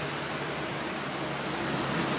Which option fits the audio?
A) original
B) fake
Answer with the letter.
A